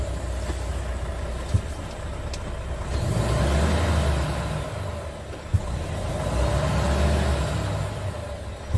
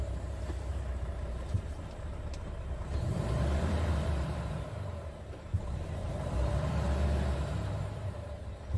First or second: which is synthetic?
second